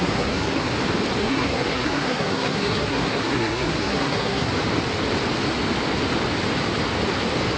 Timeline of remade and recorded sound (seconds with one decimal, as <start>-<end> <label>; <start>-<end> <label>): 0.0-0.7 remade; 0.7-1.2 recorded; 1.2-4.5 remade; 4.5-7.6 recorded